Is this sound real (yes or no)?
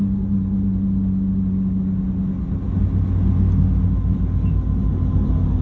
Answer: yes